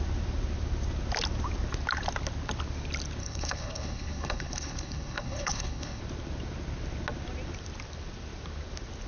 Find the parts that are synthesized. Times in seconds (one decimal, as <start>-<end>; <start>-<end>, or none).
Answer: 3.2-6.0